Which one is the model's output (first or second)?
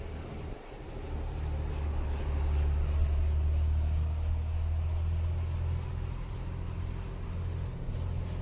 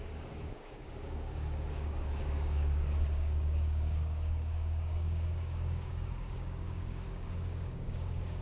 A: second